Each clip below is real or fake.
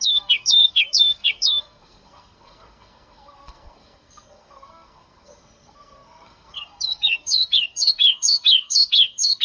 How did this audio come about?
fake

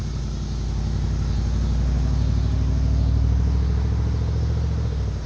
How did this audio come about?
real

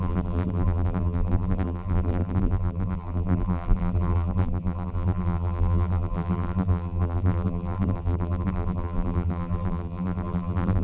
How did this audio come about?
fake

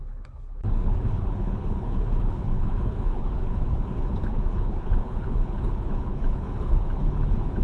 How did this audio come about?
fake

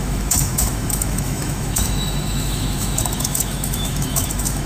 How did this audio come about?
fake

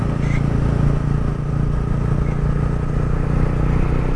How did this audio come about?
real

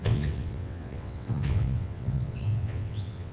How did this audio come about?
fake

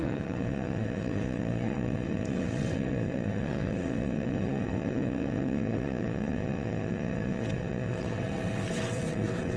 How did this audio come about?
fake